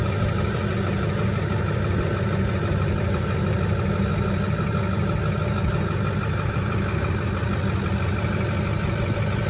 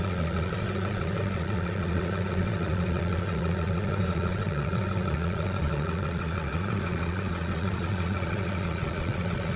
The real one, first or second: first